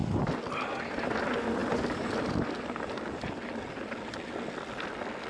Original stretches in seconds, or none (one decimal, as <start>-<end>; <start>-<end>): 0.0-5.3